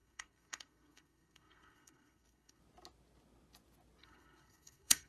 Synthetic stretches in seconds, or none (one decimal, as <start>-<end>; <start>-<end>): 0.0-2.6; 4.0-5.1